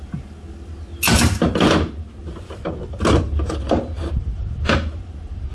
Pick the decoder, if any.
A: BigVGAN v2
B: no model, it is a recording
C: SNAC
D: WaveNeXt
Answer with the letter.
B